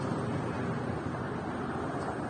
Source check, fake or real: real